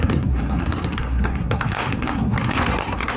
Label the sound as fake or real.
fake